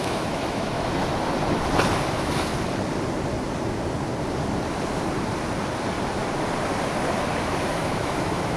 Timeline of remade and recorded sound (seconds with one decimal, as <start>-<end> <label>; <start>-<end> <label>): 0.0-1.1 remade; 1.1-2.1 recorded; 2.1-2.5 remade; 2.5-7.4 recorded; 7.4-8.6 remade